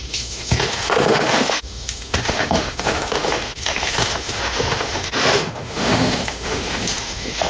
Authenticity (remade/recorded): remade